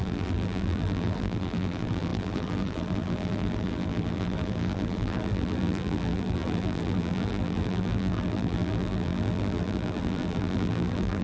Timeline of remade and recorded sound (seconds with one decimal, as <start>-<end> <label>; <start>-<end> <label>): 0.0-11.2 remade